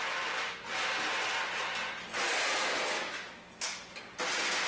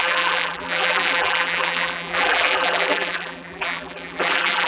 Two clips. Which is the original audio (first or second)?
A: first